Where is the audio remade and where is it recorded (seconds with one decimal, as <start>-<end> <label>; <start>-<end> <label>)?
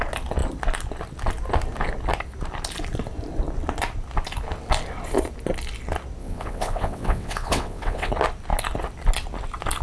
0.0-6.2 recorded; 6.2-8.1 remade; 8.1-9.8 recorded